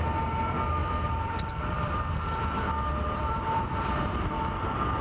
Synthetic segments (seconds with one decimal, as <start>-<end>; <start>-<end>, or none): 0.8-2.1; 2.9-4.2